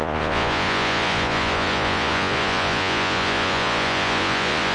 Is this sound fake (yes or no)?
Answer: yes